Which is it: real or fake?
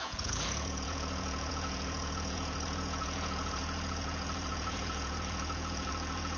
fake